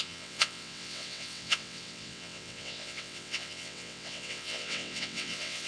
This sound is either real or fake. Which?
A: fake